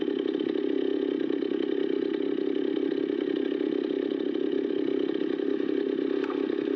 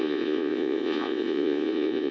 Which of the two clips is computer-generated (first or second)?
second